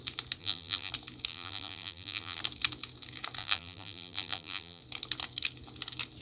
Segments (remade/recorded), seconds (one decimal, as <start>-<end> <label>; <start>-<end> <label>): 0.0-0.4 recorded; 0.4-0.9 remade; 0.9-1.3 recorded; 1.3-2.4 remade; 2.4-3.4 recorded; 3.4-4.8 remade; 4.8-6.2 recorded